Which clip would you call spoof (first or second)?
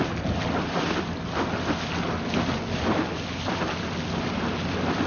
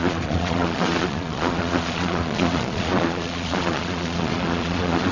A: second